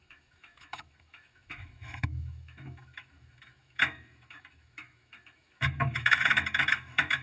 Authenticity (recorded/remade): remade